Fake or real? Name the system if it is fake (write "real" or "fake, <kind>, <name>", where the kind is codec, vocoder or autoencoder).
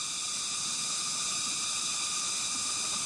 real